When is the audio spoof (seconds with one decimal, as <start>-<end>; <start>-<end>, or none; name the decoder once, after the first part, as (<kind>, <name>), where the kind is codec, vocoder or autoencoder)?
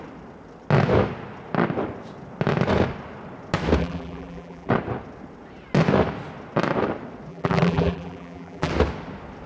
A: 3.8-4.7 (vocoder, BigVGAN v2); 7.3-8.7